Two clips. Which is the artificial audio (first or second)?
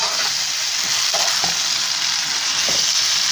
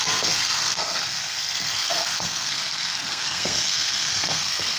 second